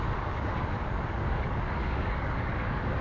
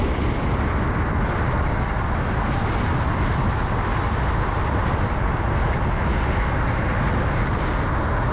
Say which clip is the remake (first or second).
first